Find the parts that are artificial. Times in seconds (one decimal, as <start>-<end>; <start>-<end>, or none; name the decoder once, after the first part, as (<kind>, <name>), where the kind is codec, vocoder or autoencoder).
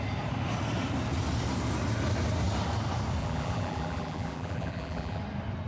3.2-5.2 (vocoder, BigVGAN v2)